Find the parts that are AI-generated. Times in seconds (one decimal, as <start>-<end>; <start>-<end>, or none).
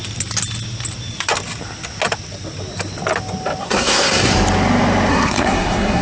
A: 3.6-4.3; 5.1-6.0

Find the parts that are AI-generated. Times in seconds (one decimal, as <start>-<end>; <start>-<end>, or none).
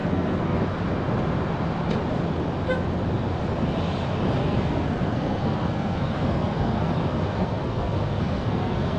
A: 0.0-0.6; 4.4-9.0